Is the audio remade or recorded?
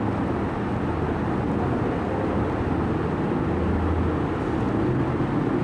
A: recorded